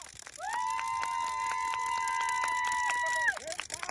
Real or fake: real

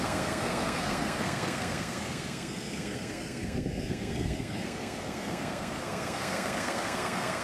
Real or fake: fake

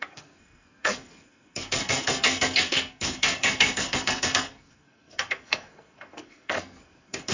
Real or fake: fake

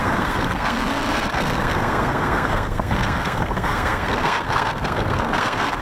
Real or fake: fake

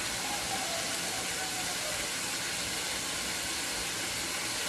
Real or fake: real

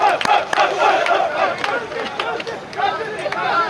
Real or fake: real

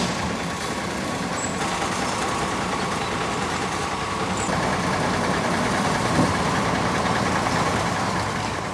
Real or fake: real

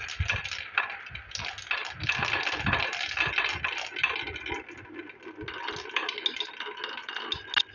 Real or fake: real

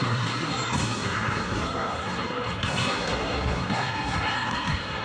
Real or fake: fake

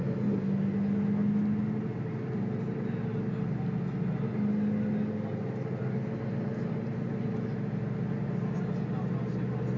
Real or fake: real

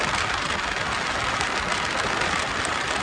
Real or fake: real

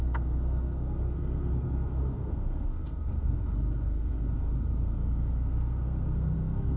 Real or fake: fake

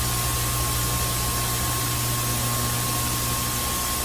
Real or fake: real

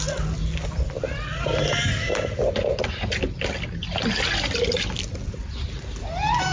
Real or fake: real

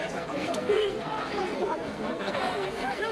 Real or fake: fake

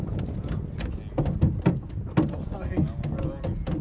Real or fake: real